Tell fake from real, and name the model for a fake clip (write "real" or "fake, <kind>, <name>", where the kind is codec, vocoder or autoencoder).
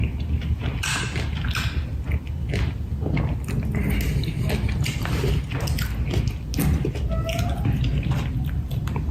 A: real